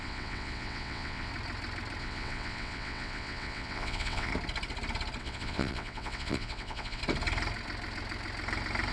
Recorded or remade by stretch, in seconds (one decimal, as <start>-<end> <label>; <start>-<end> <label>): 0.0-1.3 remade; 1.3-2.0 recorded; 2.0-4.3 remade; 4.3-5.2 recorded; 5.2-7.0 remade; 7.0-8.9 recorded